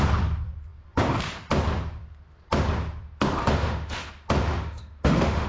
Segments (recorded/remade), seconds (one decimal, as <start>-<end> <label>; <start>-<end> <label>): 0.0-3.4 recorded; 3.4-4.0 remade; 4.0-4.4 recorded; 4.4-5.5 remade